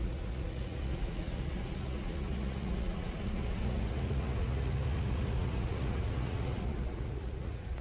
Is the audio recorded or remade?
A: remade